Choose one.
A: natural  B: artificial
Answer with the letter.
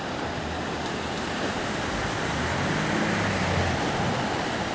A